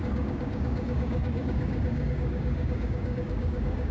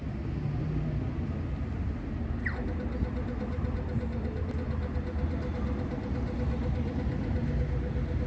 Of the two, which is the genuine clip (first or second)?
second